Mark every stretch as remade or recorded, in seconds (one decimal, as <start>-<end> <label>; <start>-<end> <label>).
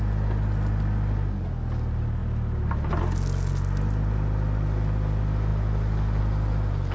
0.0-6.9 recorded